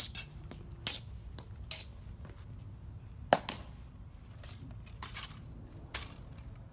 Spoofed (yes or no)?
no